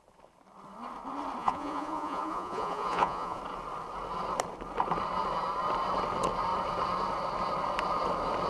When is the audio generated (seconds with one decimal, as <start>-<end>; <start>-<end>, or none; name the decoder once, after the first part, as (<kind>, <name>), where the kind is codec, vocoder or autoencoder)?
1.4-3.4 (vocoder, Vocos)